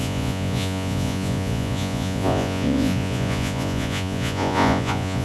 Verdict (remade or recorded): remade